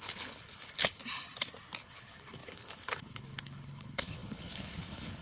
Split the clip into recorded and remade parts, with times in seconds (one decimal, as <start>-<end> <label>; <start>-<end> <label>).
0.0-1.0 remade; 1.0-1.8 recorded; 1.8-5.2 remade